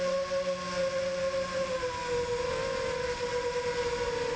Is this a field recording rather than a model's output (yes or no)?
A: yes